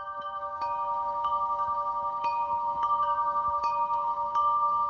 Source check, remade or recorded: remade